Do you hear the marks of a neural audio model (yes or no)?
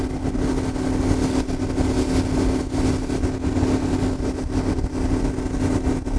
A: no